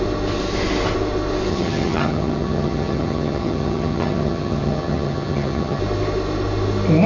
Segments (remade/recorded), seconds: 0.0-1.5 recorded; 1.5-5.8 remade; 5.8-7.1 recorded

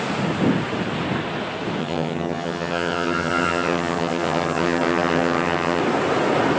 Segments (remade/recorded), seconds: 0.0-1.8 recorded; 1.8-5.8 remade; 5.8-6.6 recorded

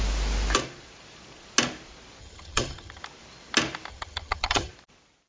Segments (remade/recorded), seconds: 0.0-2.2 recorded; 2.2-3.0 remade; 3.0-3.9 recorded; 3.9-4.7 remade; 4.7-5.3 recorded